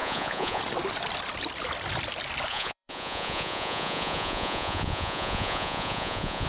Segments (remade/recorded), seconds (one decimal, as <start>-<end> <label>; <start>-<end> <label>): 0.0-0.6 remade; 0.6-2.5 recorded; 2.5-6.5 remade